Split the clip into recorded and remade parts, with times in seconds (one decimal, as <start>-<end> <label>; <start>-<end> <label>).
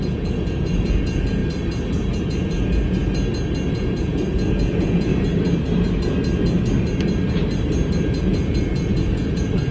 0.0-1.4 remade; 1.4-2.2 recorded; 2.2-3.0 remade; 3.0-3.7 recorded; 3.7-5.1 remade; 5.1-8.2 recorded; 8.2-9.7 remade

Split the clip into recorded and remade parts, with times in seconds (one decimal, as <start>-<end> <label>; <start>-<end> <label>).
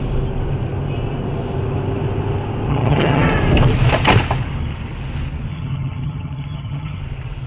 0.0-2.7 recorded; 2.7-3.2 remade; 3.2-5.5 recorded; 5.5-7.0 remade; 7.0-7.5 recorded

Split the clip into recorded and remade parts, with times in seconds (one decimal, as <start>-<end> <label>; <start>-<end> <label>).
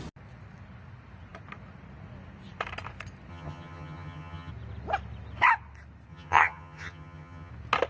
0.0-3.3 recorded; 3.3-4.5 remade; 4.5-6.1 recorded; 6.1-7.5 remade; 7.5-7.9 recorded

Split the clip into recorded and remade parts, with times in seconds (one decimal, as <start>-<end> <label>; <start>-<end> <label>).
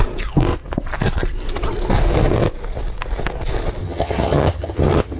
0.0-3.8 recorded; 3.8-5.2 remade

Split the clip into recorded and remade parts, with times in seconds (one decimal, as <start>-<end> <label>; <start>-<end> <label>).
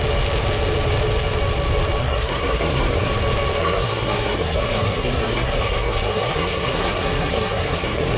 0.0-2.0 recorded; 2.0-3.1 remade; 3.1-3.6 recorded; 3.6-8.2 remade